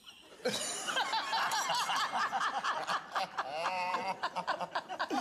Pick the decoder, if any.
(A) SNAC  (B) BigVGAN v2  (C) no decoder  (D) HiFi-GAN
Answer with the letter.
B